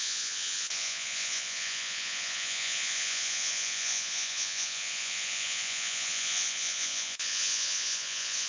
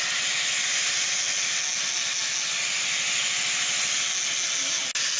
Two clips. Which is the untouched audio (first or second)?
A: second